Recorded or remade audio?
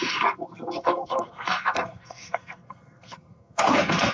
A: remade